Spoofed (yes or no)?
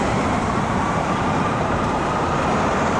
yes